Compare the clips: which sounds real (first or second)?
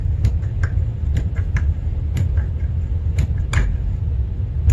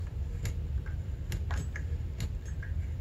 second